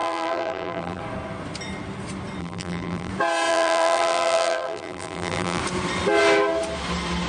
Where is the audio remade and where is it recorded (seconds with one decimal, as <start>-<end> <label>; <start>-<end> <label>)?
0.0-1.0 remade; 1.0-2.4 recorded; 2.4-3.1 remade; 3.1-3.5 recorded; 3.5-5.6 remade; 5.6-7.3 recorded